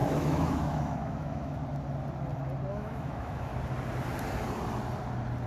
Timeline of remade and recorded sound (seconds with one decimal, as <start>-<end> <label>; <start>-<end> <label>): 0.0-1.6 remade; 1.6-2.7 recorded; 2.7-3.5 remade; 3.5-5.5 recorded